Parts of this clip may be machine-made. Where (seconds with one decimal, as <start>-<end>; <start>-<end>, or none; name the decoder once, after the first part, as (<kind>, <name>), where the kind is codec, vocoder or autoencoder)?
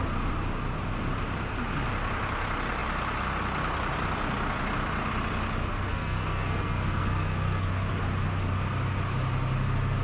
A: 5.7-7.9 (codec, SNAC)